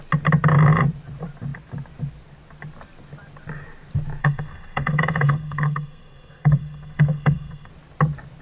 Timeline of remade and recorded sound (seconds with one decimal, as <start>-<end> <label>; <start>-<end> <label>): 0.0-4.2 recorded; 4.2-7.7 remade; 7.7-8.4 recorded

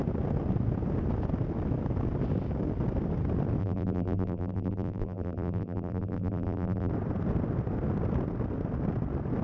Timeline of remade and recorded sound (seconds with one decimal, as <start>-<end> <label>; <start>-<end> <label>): 0.0-3.6 recorded; 3.6-6.9 remade; 6.9-9.4 recorded

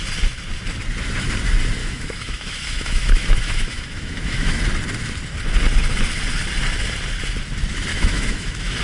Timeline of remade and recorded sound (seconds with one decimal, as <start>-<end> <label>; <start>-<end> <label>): 0.0-1.8 recorded; 1.8-4.6 remade; 4.6-7.9 recorded; 7.9-8.8 remade

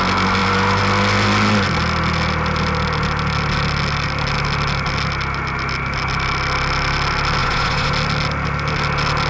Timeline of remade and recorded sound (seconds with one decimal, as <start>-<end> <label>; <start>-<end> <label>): 0.0-7.4 recorded; 7.4-7.9 remade; 7.9-9.3 recorded

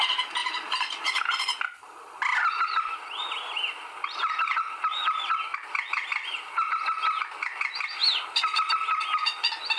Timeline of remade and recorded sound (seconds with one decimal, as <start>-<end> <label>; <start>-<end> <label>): 0.0-0.4 recorded; 0.4-4.9 remade; 4.9-5.5 recorded; 5.5-6.7 remade; 6.7-8.0 recorded; 8.0-8.7 remade; 8.7-9.8 recorded

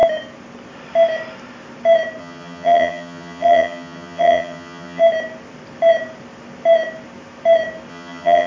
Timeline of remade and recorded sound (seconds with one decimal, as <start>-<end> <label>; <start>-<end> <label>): 0.0-2.2 recorded; 2.2-5.0 remade; 5.0-7.9 recorded; 7.9-8.5 remade